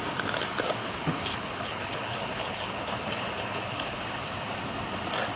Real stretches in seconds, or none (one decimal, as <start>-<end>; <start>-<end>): 0.0-0.8; 4.0-5.4